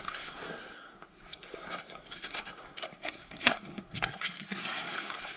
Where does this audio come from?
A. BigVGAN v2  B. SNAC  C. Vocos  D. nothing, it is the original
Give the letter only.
B